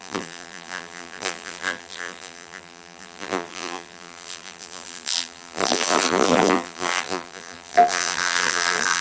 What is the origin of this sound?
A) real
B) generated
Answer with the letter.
B